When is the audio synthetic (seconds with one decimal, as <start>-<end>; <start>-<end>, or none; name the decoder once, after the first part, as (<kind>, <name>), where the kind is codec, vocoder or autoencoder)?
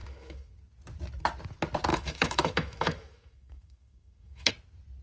0.0-0.5 (autoencoder, DAC-VAE); 1.9-4.5